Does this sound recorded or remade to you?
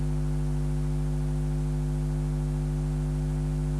recorded